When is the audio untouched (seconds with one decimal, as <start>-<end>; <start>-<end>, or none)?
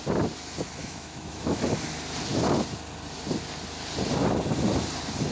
0.0-0.8; 1.6-5.3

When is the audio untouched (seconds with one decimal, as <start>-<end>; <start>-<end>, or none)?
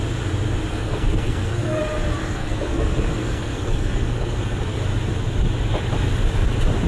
0.0-0.7; 1.8-2.2; 4.8-6.9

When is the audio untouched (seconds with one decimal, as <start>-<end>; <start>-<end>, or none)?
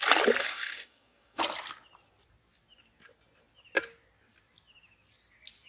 0.0-0.4; 1.4-5.7